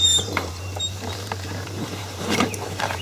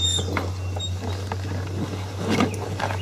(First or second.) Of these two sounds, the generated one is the first